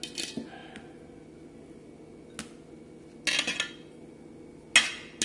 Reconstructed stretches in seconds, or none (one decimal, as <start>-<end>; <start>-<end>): none